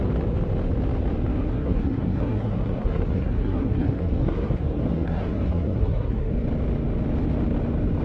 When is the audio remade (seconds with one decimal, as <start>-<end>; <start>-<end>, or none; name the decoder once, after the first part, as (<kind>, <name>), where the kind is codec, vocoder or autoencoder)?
1.5-6.3 (codec, SNAC)